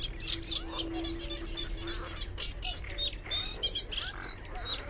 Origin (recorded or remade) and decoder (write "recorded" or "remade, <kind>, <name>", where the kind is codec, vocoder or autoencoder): recorded